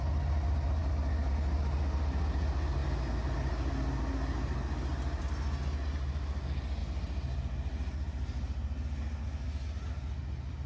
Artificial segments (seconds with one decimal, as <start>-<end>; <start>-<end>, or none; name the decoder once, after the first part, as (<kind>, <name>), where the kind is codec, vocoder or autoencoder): none